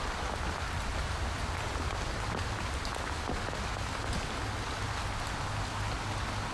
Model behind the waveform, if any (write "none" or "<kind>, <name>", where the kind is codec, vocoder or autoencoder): none